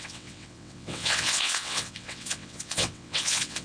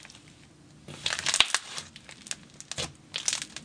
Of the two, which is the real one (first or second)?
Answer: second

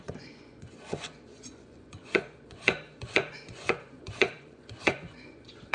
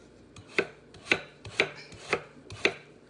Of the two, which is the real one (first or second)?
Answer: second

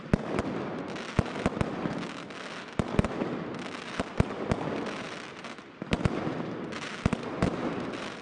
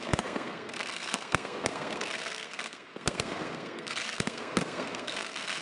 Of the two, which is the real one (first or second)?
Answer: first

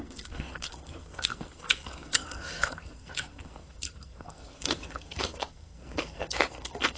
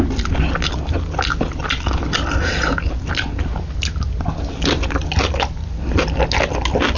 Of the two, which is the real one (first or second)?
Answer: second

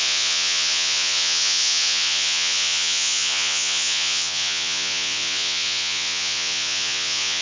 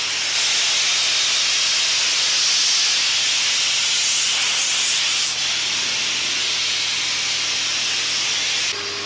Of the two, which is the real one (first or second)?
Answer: second